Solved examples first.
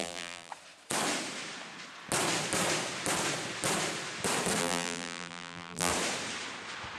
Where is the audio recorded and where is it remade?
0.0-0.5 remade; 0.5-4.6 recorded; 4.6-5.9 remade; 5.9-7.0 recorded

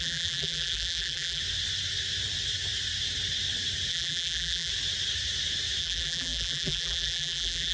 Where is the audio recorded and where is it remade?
0.0-1.4 remade; 1.4-3.9 recorded; 3.9-4.7 remade; 4.7-5.8 recorded; 5.8-7.7 remade

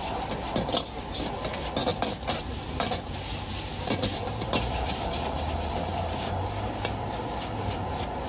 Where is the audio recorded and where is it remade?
0.0-1.9 recorded; 1.9-6.9 remade; 6.9-8.3 recorded